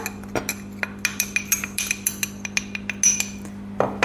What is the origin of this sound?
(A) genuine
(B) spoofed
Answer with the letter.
A